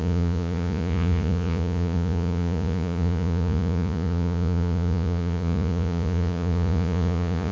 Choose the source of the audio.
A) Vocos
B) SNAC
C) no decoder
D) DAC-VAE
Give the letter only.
A